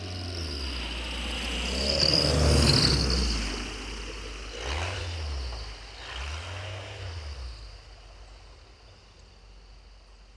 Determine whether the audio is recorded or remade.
recorded